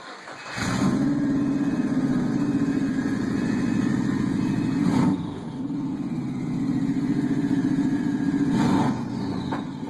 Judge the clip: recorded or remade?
remade